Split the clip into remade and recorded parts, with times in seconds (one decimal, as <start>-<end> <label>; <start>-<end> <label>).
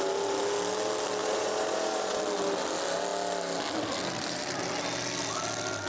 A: 0.0-1.2 recorded; 1.2-2.2 remade; 2.2-5.9 recorded